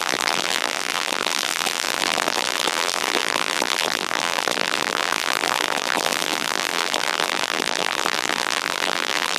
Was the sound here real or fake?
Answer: fake